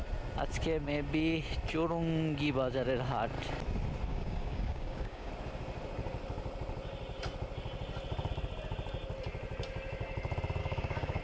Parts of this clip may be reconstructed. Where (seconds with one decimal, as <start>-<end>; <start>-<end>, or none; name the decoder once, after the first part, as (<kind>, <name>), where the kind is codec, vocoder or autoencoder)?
4.1-5.3 (codec, DAC); 10.6-11.2

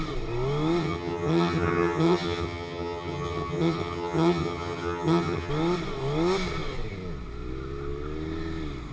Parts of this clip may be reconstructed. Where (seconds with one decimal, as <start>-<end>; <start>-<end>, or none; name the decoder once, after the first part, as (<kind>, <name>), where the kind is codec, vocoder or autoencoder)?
0.8-5.5 (vocoder, HiFi-GAN)

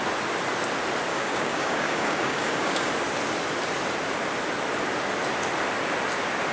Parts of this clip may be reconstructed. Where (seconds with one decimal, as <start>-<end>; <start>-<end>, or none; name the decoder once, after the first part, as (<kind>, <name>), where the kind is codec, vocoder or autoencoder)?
1.1-2.9 (codec, DAC)

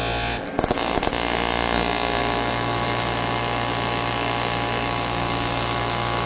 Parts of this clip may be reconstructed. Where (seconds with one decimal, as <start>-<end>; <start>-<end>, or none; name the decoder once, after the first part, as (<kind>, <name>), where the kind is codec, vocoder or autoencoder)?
2.2-6.3 (autoencoder, DAC-VAE)